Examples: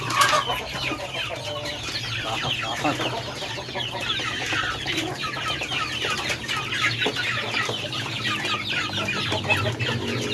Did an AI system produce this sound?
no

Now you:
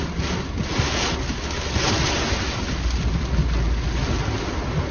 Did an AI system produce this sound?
no